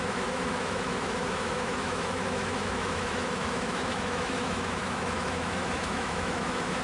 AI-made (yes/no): yes